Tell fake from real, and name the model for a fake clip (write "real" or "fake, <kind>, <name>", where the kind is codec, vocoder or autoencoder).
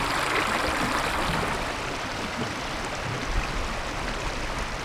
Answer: real